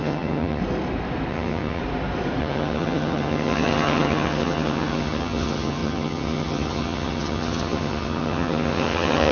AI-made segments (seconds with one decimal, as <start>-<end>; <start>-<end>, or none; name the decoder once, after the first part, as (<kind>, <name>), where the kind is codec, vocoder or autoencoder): 0.0-0.6 (vocoder, HiFi-GAN); 1.3-1.8; 2.4-9.3

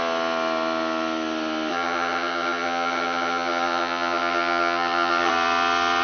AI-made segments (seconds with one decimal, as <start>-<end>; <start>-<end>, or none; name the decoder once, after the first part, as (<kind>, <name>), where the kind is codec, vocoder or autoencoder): 1.7-5.3 (vocoder, HiFi-GAN)

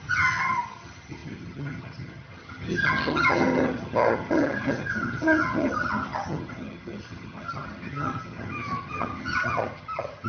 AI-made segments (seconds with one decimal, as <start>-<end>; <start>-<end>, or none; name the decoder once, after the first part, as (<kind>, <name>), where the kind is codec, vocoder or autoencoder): 0.0-10.3 (vocoder, HiFi-GAN)

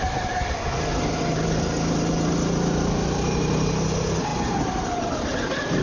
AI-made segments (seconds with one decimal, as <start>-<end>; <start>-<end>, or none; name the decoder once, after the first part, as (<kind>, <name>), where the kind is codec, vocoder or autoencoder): none

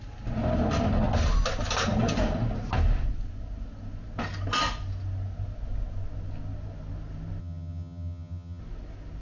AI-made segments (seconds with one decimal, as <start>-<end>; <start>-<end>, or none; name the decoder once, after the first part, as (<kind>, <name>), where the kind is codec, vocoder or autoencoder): 7.4-8.6 (vocoder, HiFi-GAN)

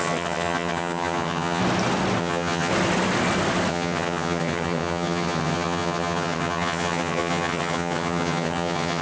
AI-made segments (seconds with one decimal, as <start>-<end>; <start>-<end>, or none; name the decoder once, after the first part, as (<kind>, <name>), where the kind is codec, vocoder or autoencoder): 0.0-1.6 (vocoder, HiFi-GAN); 2.2-2.7; 3.7-9.0

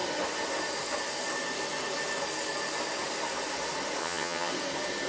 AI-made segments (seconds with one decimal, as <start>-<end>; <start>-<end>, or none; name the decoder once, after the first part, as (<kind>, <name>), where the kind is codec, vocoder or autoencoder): 4.0-4.5 (vocoder, HiFi-GAN)

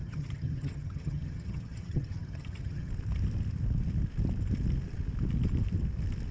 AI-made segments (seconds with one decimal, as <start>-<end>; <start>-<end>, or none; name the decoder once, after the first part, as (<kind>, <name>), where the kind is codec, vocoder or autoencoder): 0.0-2.9 (vocoder, HiFi-GAN)